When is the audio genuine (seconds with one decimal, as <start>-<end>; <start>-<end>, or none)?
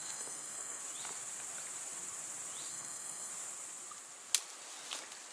0.8-2.7; 3.3-5.3